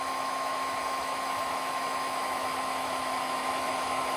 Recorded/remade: remade